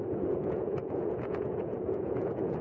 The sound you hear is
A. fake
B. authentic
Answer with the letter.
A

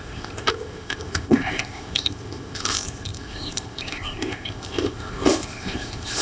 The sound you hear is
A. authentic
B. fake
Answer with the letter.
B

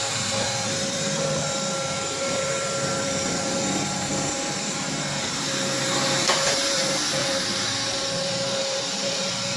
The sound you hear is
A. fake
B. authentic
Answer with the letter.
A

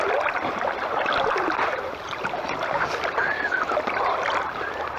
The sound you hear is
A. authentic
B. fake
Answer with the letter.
A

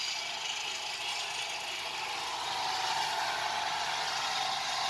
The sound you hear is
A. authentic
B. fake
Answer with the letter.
A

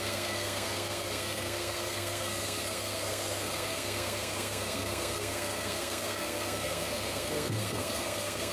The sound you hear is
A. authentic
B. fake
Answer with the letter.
B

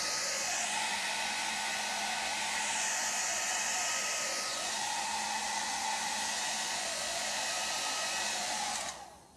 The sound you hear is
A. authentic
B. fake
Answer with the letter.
B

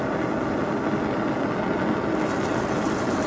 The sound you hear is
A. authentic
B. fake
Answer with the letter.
A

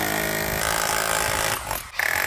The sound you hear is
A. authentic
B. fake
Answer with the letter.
A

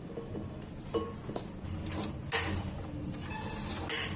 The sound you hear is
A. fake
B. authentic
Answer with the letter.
B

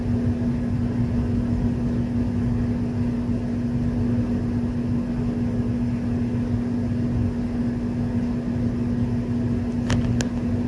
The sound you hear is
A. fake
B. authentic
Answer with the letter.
B